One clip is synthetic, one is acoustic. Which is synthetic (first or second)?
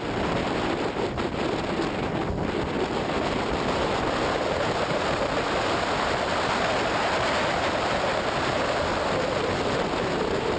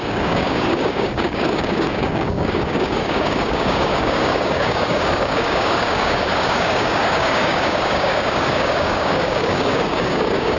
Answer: second